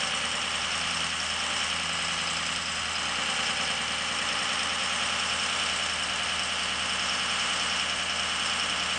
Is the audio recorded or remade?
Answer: recorded